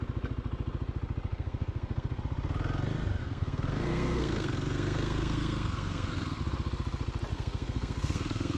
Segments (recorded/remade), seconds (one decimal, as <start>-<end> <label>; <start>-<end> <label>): 0.0-1.3 recorded; 1.3-2.2 remade; 2.2-3.2 recorded; 3.2-6.4 remade; 6.4-7.3 recorded; 7.3-8.6 remade